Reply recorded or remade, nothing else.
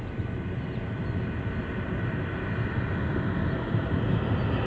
recorded